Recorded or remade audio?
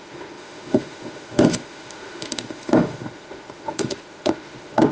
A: remade